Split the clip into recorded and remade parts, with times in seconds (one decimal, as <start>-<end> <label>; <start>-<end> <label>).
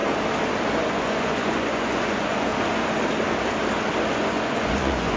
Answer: 0.0-0.9 recorded; 0.9-2.5 remade; 2.5-4.1 recorded; 4.1-5.2 remade